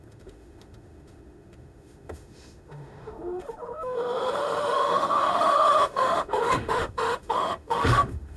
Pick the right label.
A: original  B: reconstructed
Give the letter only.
B